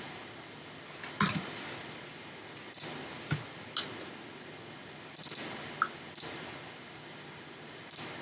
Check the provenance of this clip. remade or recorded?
recorded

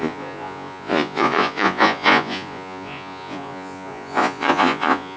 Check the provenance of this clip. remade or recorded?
remade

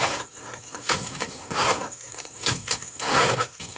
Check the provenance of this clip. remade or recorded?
remade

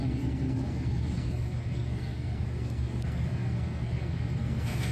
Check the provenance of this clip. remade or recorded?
remade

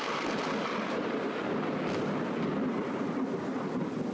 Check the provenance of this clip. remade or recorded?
recorded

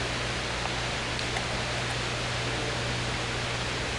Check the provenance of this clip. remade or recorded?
recorded